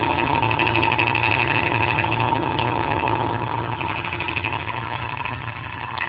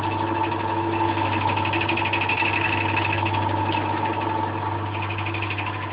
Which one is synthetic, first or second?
first